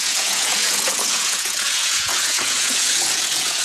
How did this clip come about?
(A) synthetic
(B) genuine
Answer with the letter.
A